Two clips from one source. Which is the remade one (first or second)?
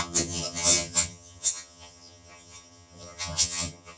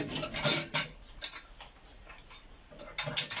first